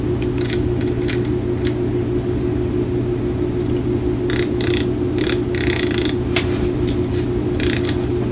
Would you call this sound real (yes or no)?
yes